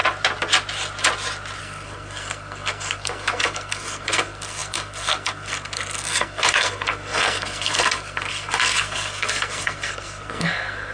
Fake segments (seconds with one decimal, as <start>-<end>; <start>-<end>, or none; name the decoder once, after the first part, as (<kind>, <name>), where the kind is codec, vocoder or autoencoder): 1.6-10.9 (codec, SNAC)